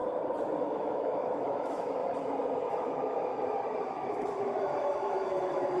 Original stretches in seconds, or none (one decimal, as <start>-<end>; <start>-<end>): 0.0-0.6; 2.0-2.7; 3.3-3.9